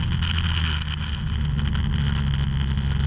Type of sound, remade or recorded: recorded